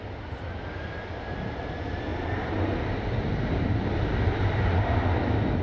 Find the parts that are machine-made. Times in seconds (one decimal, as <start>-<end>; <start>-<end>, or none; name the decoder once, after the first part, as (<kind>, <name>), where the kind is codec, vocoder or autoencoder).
none